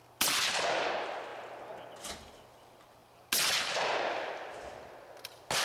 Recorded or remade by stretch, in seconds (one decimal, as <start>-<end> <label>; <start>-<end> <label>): 0.0-5.6 recorded